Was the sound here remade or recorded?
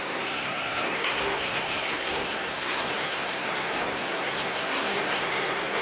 remade